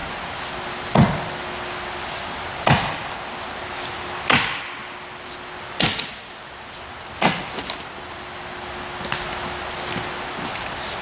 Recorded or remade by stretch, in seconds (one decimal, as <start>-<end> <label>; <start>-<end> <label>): 0.0-11.0 recorded